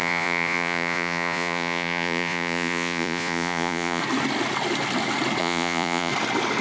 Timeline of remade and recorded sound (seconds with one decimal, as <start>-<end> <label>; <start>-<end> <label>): 0.0-4.0 remade; 4.0-5.4 recorded; 5.4-6.1 remade; 6.1-6.6 recorded